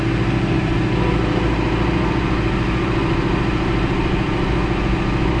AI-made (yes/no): yes